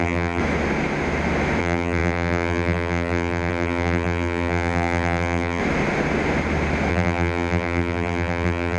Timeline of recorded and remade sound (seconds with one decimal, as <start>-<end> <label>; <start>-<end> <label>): 0.0-0.4 remade; 0.4-1.6 recorded; 1.6-5.6 remade; 5.6-6.9 recorded; 6.9-8.8 remade